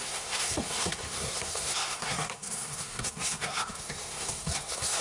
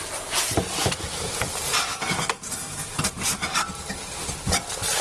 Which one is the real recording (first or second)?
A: second